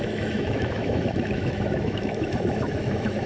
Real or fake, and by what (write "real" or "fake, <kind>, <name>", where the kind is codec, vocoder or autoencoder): fake, autoencoder, DAC-VAE